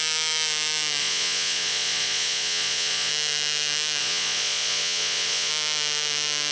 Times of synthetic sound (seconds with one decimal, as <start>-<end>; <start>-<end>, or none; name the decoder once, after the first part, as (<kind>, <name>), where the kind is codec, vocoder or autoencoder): 1.0-3.1 (vocoder, Vocos); 4.0-5.5